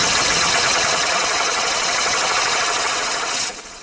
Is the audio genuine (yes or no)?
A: no